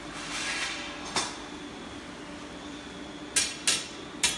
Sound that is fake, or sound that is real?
real